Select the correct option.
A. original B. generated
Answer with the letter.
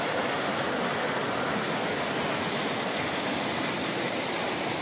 A